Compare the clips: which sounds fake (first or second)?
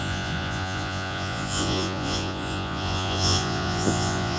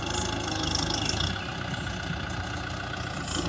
first